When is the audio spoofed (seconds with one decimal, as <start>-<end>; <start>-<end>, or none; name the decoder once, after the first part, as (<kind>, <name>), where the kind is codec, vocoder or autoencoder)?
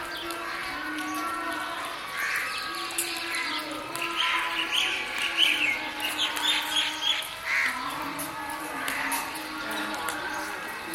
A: none